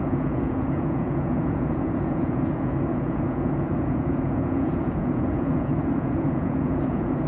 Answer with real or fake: fake